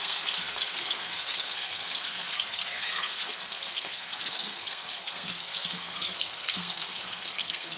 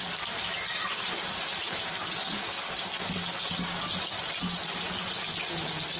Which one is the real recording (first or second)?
second